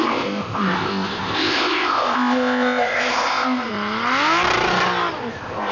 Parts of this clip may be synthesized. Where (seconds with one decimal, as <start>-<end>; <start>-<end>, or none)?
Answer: 0.0-3.7; 5.3-5.7